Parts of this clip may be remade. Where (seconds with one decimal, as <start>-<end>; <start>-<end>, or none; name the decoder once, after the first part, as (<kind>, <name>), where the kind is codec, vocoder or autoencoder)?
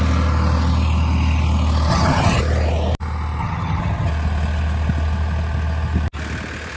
1.9-2.4 (vocoder, HiFi-GAN); 3.4-4.1